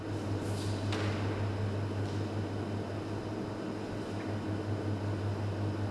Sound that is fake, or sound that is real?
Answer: real